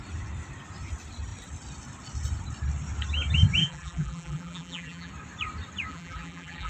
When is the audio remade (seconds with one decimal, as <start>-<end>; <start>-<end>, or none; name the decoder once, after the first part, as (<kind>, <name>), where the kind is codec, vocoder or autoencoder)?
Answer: 3.6-5.1 (vocoder, BigVGAN v2); 5.9-6.7

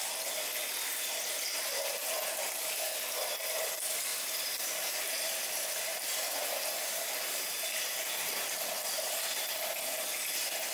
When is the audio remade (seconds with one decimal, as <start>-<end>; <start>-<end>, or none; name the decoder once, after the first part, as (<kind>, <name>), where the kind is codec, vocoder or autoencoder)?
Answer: 4.1-8.3 (vocoder, BigVGAN v2)

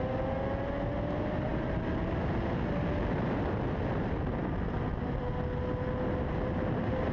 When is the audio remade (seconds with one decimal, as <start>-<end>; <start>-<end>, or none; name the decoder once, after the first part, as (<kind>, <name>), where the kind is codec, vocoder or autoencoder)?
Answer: none

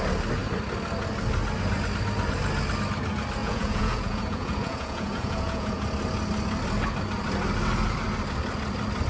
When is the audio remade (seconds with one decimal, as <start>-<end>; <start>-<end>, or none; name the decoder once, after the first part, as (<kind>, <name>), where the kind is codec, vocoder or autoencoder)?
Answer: 3.4-5.8 (vocoder, Vocos)

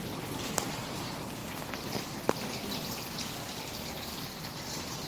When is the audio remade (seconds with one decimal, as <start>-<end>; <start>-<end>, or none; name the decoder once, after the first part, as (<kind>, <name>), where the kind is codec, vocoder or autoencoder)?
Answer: none

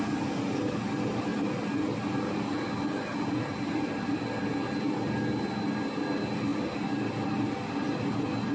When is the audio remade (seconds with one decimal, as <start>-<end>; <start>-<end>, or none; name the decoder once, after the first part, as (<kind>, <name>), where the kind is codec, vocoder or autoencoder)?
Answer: none